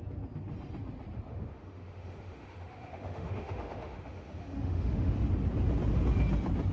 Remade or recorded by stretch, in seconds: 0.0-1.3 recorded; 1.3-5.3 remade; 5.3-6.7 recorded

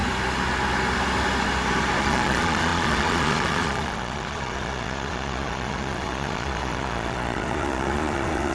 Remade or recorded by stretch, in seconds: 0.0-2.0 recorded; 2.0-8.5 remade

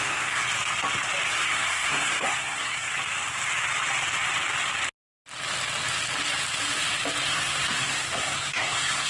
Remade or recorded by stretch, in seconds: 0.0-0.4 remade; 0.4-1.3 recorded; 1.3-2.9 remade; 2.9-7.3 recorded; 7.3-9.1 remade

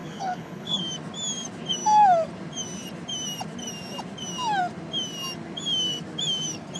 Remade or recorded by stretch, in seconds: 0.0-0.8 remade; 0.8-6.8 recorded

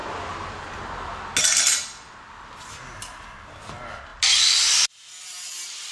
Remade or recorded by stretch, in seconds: 0.0-5.9 recorded

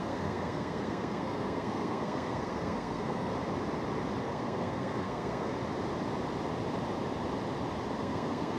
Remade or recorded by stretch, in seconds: 0.0-3.3 remade; 3.3-4.2 recorded; 4.2-5.5 remade; 5.5-8.0 recorded; 8.0-8.6 remade

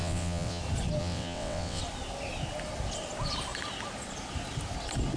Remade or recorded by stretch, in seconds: 0.0-0.6 remade; 0.6-1.0 recorded; 1.0-1.8 remade; 1.8-5.2 recorded

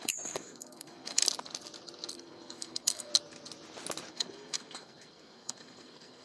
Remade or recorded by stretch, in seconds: 0.0-1.2 remade; 1.2-2.1 recorded; 2.1-3.1 remade; 3.1-4.1 recorded; 4.1-6.2 remade